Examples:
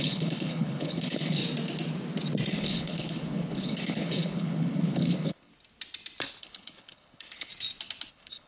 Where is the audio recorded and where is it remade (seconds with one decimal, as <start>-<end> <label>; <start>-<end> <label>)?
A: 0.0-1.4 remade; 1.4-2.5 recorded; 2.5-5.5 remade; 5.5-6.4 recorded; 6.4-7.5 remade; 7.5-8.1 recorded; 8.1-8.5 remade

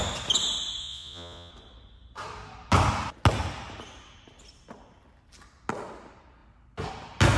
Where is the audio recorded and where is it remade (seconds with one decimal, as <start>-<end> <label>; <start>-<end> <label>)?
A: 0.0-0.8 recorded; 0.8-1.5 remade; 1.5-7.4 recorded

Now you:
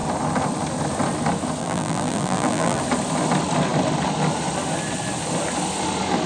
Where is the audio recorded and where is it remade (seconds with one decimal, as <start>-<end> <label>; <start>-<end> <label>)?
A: 0.0-1.6 recorded; 1.6-2.8 remade; 2.8-6.3 recorded

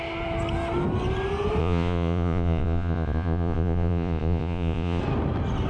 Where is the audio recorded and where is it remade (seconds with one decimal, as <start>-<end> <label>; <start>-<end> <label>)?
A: 0.0-1.6 recorded; 1.6-5.0 remade; 5.0-5.7 recorded

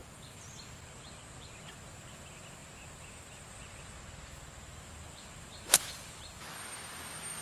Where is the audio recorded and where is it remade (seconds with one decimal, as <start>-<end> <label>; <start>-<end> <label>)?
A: 0.0-7.4 recorded

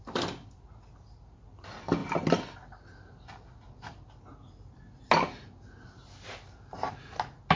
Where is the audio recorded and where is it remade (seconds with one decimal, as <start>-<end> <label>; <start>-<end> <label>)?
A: 0.0-7.6 recorded

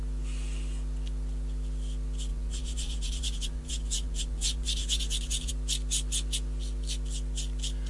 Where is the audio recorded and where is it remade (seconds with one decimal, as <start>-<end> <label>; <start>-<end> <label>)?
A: 0.0-2.3 recorded; 2.3-5.5 remade; 5.5-7.9 recorded

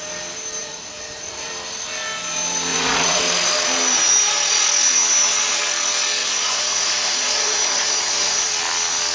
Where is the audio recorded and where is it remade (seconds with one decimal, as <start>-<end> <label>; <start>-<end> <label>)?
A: 0.0-0.6 recorded; 0.6-1.5 remade; 1.5-2.7 recorded; 2.7-3.2 remade; 3.2-6.2 recorded; 6.2-8.5 remade; 8.5-9.1 recorded